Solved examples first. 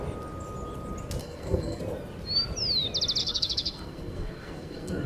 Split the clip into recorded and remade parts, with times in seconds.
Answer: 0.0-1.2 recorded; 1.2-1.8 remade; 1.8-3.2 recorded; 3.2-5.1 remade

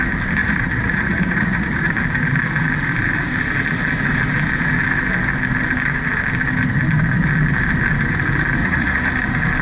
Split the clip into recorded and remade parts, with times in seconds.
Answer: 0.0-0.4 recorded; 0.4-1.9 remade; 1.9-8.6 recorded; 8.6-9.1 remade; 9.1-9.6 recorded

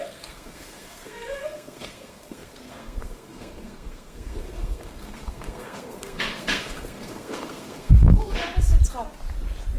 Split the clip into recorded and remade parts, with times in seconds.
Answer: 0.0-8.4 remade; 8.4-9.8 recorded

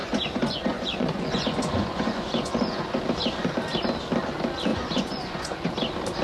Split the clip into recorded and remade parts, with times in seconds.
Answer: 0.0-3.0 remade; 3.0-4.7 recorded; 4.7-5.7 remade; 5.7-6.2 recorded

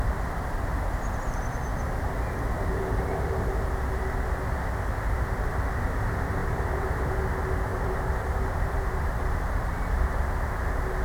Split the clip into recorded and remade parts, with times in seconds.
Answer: 0.0-1.7 recorded; 1.7-2.7 remade; 2.7-6.4 recorded; 6.4-7.1 remade; 7.1-7.7 recorded; 7.7-9.7 remade; 9.7-11.0 recorded

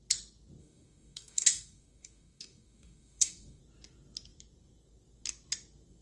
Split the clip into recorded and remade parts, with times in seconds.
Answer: 0.0-0.6 recorded; 0.6-3.6 remade; 3.6-6.0 recorded